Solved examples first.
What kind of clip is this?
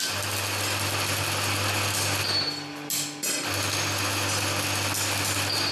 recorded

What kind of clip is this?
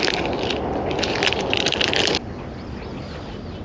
recorded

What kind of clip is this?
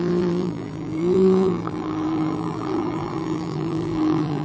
remade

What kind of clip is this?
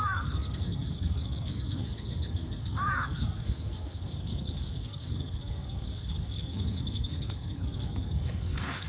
remade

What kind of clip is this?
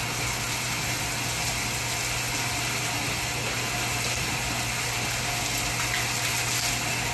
recorded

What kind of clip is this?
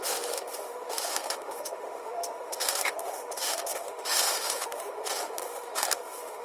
remade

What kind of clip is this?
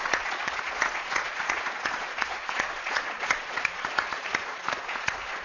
remade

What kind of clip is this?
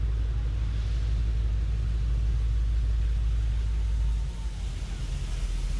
recorded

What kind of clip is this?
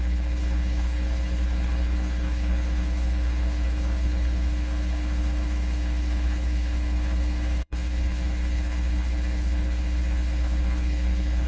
remade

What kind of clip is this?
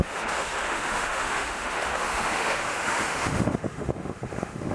remade